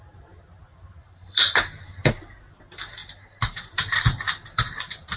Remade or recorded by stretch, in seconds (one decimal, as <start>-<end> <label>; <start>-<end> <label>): 0.0-1.0 recorded; 1.0-2.1 remade; 2.1-3.0 recorded; 3.0-5.2 remade